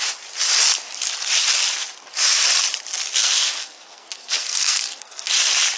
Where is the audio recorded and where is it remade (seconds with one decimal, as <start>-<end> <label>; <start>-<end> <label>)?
0.0-3.2 recorded; 3.2-5.3 remade; 5.3-5.8 recorded